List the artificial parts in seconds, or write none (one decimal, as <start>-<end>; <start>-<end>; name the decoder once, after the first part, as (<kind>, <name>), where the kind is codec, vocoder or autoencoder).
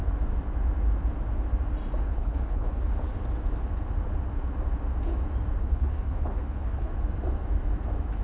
2.1-2.8 (codec, HILCodec); 5.6-6.9